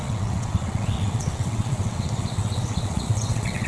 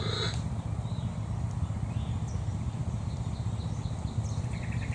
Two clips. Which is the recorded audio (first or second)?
second